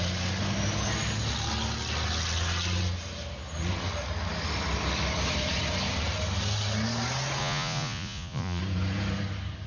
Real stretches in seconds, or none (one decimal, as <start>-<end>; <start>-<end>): 0.0-7.4; 8.6-9.7